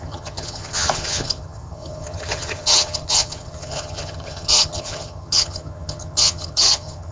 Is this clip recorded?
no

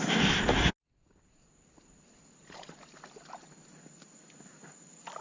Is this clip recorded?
yes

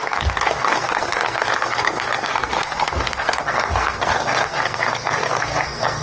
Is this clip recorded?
no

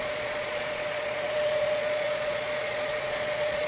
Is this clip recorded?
no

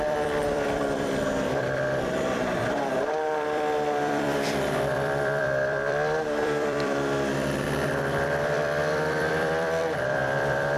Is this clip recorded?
no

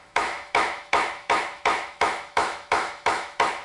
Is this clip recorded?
no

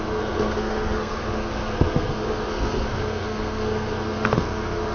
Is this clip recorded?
no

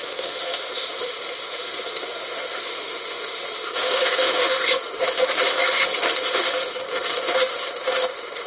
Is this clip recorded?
no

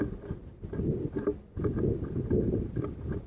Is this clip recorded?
yes